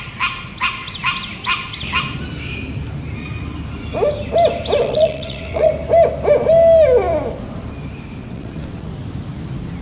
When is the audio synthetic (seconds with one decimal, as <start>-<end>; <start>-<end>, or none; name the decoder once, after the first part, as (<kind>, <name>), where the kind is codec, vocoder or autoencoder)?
4.8-5.7 (vocoder, WaveNeXt); 8.2-8.9